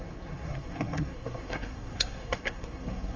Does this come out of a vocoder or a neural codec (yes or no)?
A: yes